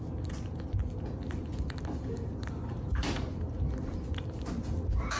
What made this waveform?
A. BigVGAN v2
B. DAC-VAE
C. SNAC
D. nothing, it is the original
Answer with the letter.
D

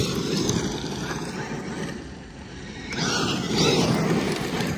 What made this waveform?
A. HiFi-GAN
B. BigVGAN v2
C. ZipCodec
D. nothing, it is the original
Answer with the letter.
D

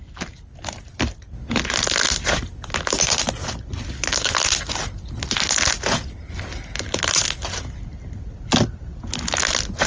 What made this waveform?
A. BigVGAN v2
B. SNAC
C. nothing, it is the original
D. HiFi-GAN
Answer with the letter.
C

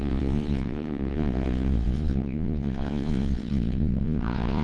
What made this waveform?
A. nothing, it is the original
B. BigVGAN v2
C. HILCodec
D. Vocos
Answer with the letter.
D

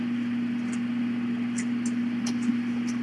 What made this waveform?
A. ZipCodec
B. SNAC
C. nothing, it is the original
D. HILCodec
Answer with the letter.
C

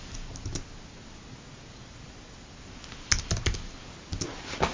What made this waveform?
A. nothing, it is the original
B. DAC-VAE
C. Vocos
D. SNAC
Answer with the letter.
A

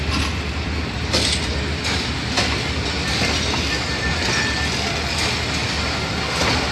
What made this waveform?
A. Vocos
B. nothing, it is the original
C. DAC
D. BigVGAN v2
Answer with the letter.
B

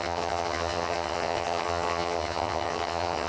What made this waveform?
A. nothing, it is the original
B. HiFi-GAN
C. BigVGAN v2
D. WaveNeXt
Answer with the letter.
B